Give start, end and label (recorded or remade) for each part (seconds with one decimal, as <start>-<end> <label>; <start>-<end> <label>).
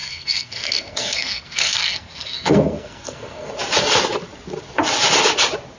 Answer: 0.0-3.5 remade; 3.5-5.8 recorded